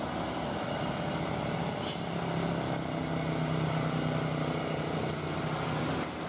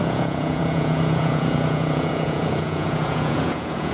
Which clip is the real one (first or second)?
first